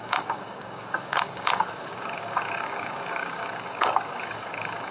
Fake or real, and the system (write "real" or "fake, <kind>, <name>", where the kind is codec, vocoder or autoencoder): fake, codec, DAC